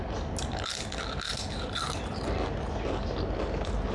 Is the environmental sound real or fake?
real